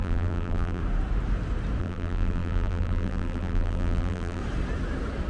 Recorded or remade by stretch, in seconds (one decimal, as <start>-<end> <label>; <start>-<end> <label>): 0.0-0.8 remade; 0.8-1.8 recorded; 1.8-4.4 remade; 4.4-5.3 recorded